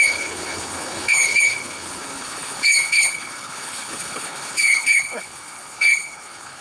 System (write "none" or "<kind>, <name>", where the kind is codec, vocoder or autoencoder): codec, HILCodec